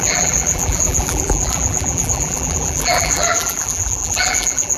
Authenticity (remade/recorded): remade